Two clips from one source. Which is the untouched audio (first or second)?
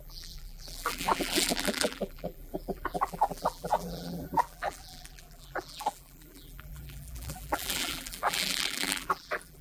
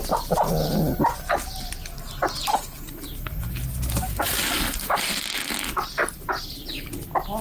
second